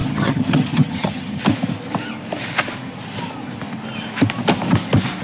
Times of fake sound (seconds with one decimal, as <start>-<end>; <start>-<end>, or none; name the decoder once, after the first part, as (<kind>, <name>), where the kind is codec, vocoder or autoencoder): 0.0-1.4 (vocoder, HiFi-GAN)